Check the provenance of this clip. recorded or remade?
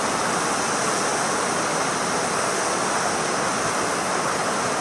recorded